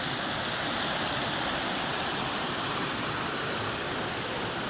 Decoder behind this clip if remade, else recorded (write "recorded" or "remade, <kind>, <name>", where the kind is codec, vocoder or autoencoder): recorded